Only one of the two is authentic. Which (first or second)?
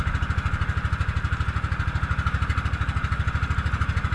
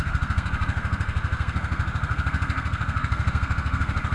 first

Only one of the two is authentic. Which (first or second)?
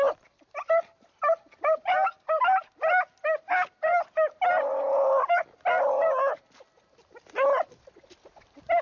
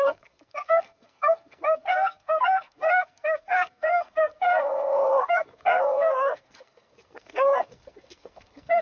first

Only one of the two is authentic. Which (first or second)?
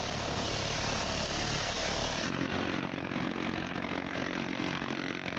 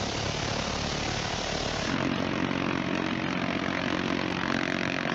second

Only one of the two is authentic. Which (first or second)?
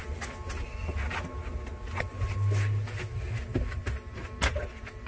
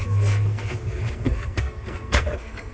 first